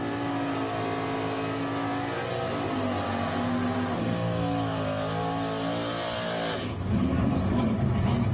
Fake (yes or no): no